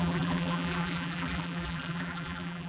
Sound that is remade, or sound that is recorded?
remade